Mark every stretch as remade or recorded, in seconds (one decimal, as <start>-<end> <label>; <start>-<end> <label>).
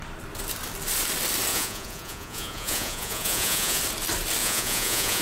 0.0-1.5 recorded; 1.5-3.8 remade; 3.8-4.4 recorded; 4.4-5.2 remade